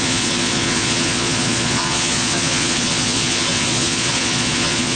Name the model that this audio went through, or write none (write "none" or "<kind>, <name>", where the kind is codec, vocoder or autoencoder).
vocoder, Vocos